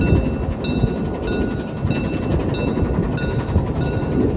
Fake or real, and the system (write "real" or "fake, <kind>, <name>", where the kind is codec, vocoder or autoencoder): real